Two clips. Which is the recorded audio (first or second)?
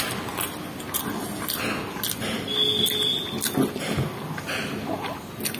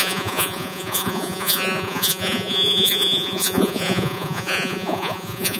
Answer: first